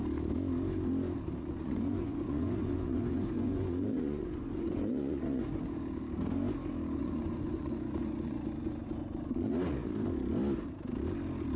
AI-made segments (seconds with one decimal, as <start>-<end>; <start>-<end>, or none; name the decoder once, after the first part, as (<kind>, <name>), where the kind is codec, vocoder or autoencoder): 1.4-5.5 (vocoder, Vocos); 7.0-9.5